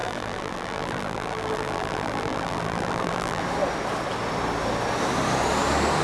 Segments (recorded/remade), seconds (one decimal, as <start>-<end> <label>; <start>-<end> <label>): 0.0-3.4 remade; 3.4-6.0 recorded